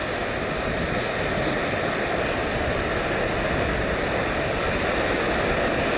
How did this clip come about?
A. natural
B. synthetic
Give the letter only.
A